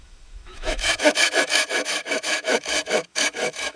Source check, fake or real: fake